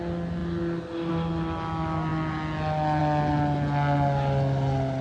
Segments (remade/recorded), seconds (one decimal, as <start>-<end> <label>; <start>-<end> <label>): 0.0-5.0 recorded

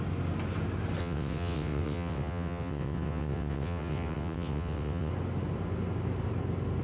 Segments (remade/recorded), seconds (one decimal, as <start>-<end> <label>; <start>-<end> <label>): 0.0-1.0 recorded; 1.0-5.1 remade; 5.1-6.8 recorded

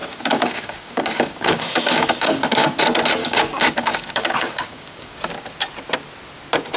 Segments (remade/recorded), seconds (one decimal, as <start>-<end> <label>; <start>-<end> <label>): 0.0-2.8 remade; 2.8-3.2 recorded; 3.2-5.3 remade; 5.3-6.8 recorded